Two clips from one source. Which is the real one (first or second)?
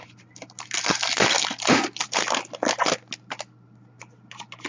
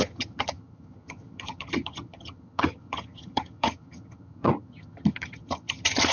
first